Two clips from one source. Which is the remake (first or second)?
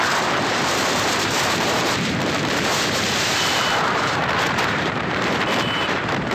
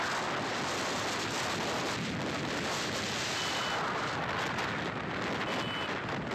first